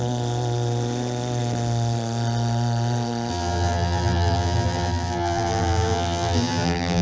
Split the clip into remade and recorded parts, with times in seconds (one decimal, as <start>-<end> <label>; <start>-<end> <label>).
0.0-3.3 recorded; 3.3-7.0 remade